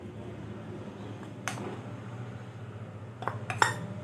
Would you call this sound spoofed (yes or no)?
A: no